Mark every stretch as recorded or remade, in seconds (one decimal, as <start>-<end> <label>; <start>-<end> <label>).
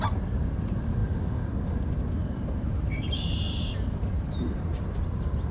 0.0-1.0 remade; 1.0-2.0 recorded; 2.0-5.5 remade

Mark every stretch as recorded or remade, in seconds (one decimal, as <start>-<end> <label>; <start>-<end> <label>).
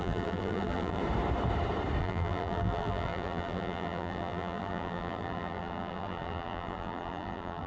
0.0-1.0 remade; 1.0-2.0 recorded; 2.0-7.7 remade